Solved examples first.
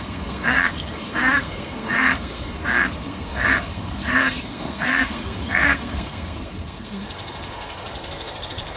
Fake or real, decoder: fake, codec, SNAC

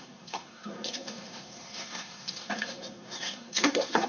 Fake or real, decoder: fake, codec, SNAC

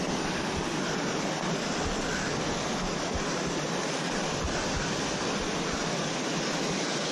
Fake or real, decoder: real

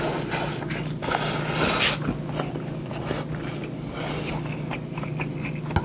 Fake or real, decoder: real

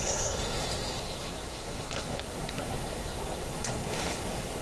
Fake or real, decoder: fake, codec, SNAC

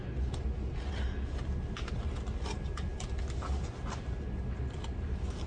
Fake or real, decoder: real